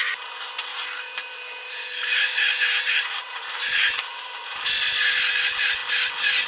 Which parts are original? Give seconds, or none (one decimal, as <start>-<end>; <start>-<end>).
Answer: 0.0-0.7; 4.6-6.5